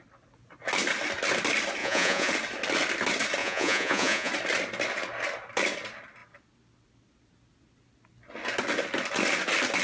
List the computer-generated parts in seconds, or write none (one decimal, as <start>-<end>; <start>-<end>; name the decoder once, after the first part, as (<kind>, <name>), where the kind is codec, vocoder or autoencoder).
1.8-2.3 (vocoder, Vocos); 3.4-4.3